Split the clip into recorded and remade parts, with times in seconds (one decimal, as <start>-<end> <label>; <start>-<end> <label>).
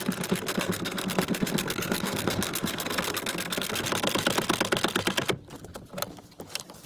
0.0-0.5 recorded; 0.5-3.8 remade; 3.8-6.9 recorded